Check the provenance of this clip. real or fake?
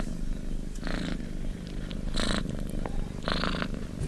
real